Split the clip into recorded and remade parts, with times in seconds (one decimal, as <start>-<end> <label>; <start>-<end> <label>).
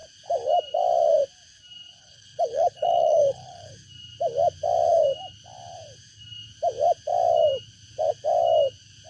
0.0-2.0 recorded; 2.0-3.7 remade; 3.7-9.1 recorded